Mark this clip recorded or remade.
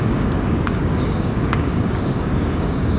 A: remade